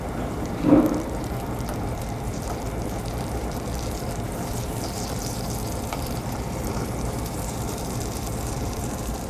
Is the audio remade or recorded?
remade